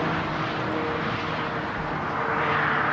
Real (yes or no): yes